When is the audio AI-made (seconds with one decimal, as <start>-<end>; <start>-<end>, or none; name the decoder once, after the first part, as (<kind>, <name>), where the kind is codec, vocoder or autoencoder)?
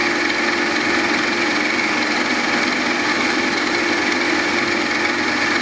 3.1-3.7 (autoencoder, DAC-VAE)